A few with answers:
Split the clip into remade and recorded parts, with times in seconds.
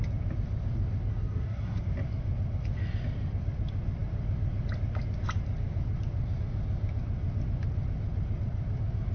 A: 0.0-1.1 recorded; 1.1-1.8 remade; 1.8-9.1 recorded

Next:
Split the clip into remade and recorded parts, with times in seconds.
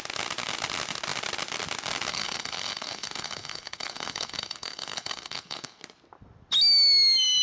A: 0.0-2.1 recorded; 2.1-5.8 remade; 5.8-7.4 recorded